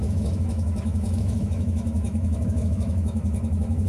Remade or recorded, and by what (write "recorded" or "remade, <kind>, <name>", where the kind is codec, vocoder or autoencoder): remade, autoencoder, DAC-VAE